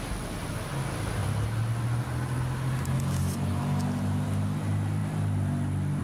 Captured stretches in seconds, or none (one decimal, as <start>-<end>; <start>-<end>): 0.0-6.0